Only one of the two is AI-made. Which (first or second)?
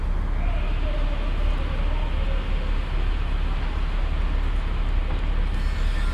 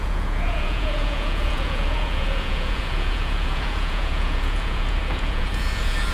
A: second